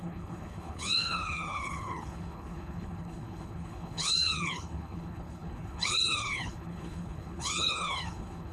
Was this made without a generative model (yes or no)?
no